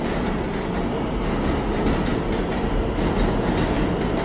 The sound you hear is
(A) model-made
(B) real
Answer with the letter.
B